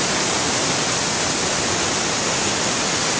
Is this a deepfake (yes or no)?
no